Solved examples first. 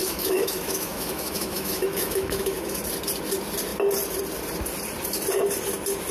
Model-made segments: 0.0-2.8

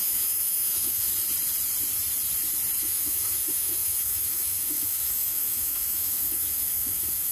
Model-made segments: 0.0-1.1; 2.8-7.3